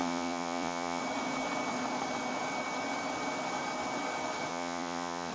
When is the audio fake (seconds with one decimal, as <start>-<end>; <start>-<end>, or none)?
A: 0.0-1.0; 4.5-5.3